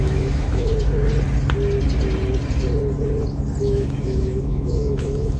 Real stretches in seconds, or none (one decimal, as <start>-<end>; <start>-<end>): 0.7-3.6